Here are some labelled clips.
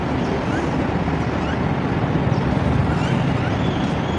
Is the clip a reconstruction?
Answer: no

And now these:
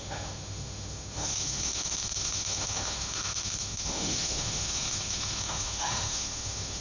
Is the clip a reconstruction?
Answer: yes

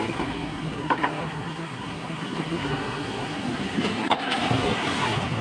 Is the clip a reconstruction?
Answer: yes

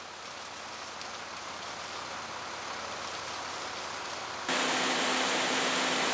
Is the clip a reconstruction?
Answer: no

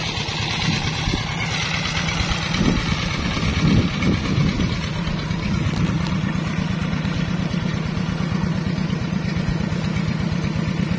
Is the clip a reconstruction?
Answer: no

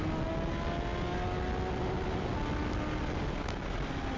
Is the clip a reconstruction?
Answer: no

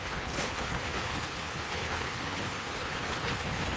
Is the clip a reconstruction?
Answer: yes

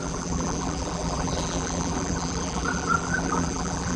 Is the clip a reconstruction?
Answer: yes